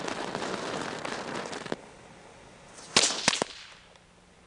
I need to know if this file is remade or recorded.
recorded